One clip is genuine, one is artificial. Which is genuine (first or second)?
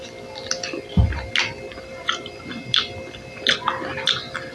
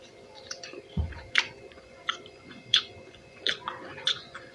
first